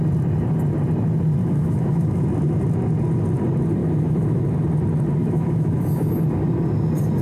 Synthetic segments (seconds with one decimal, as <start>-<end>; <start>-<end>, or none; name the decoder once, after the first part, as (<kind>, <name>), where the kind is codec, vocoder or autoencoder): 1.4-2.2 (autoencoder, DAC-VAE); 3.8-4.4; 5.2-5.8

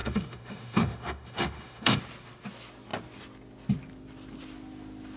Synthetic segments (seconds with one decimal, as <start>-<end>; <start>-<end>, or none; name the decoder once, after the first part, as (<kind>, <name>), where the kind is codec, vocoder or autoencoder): 0.0-2.0 (autoencoder, DAC-VAE)

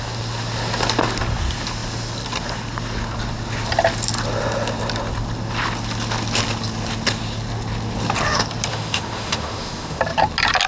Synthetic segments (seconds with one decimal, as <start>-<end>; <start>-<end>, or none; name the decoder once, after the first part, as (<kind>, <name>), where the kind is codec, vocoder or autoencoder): 8.7-10.0 (autoencoder, DAC-VAE)

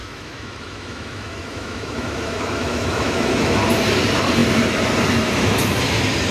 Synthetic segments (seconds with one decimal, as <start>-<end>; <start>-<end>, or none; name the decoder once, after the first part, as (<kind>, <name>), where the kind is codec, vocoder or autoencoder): 0.0-3.6 (autoencoder, DAC-VAE)

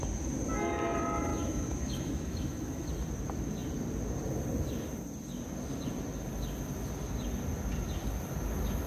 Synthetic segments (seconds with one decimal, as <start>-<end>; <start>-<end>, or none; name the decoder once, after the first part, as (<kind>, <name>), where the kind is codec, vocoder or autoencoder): 1.3-2.9 (autoencoder, DAC-VAE)

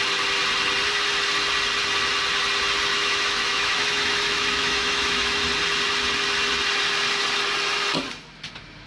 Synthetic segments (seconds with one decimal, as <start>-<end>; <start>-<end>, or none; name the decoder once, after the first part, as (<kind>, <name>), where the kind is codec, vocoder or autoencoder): 2.9-5.4 (autoencoder, DAC-VAE)